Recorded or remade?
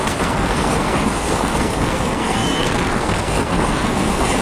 remade